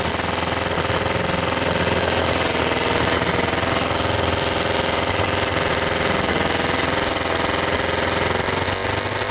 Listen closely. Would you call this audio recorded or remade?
recorded